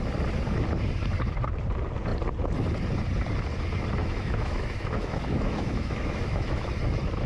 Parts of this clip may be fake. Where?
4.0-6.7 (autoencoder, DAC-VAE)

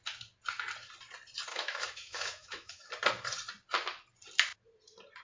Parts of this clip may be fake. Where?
1.5-2.9 (autoencoder, DAC-VAE)